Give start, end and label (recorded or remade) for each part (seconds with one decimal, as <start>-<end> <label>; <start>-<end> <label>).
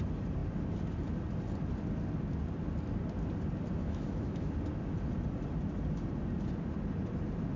0.0-3.8 recorded; 3.8-4.5 remade; 4.5-7.6 recorded